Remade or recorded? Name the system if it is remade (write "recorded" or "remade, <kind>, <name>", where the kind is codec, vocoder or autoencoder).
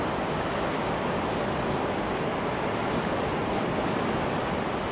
recorded